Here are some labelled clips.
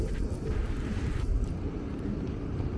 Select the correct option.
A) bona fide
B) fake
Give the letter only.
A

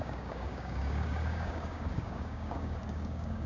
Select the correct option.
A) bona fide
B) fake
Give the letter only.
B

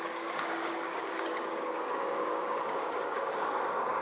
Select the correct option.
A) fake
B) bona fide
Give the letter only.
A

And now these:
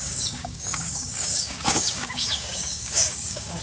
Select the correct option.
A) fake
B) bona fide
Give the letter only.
A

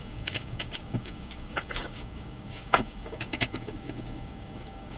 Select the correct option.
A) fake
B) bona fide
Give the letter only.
A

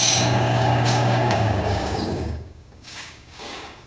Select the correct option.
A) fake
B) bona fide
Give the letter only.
A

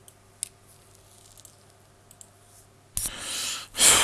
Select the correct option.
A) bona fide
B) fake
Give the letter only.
A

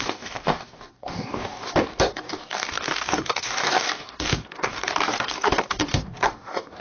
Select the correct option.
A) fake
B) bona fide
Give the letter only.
A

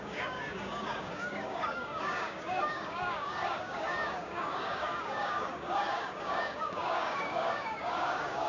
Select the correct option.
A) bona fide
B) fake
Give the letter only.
B